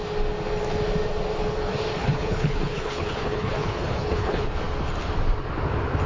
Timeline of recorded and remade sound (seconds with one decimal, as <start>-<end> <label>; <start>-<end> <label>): 0.0-2.0 recorded; 2.0-4.5 remade; 4.5-6.1 recorded